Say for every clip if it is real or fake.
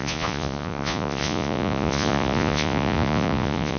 fake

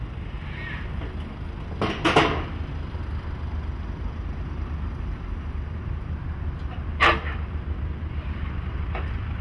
real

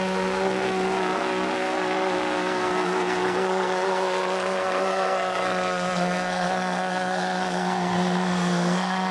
fake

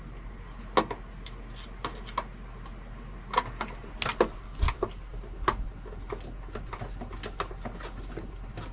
real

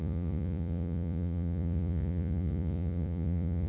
fake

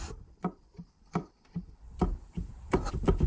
fake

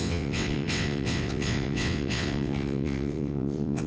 fake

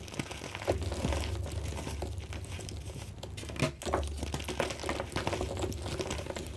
real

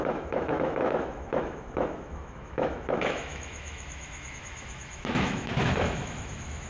fake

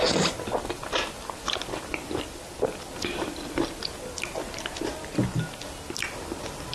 real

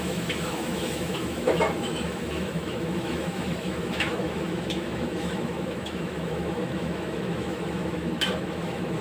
fake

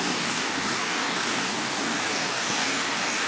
fake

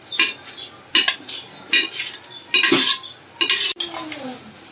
real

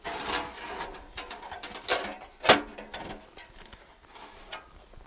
real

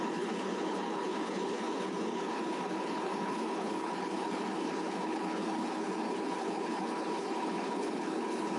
fake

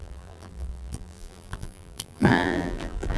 fake